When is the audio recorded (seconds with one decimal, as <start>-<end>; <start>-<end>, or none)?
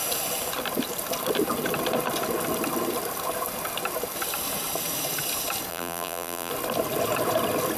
0.0-5.7; 6.5-7.8